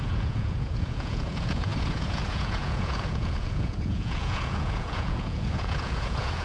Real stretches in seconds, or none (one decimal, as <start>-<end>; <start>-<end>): none